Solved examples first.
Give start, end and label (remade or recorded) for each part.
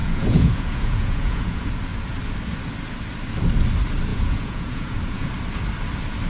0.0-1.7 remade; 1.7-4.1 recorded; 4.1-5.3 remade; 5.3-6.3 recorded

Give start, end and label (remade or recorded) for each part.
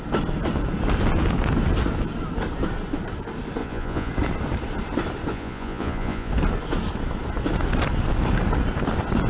0.0-3.6 recorded; 3.6-4.1 remade; 4.1-5.3 recorded; 5.3-6.3 remade; 6.3-9.3 recorded